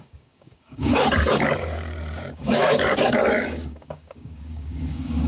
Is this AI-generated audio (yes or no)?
yes